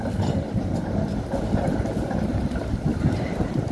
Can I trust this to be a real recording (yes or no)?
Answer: no